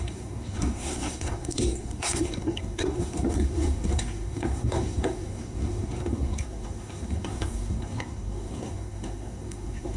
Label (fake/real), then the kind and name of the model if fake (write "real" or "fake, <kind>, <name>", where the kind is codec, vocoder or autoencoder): fake, codec, SNAC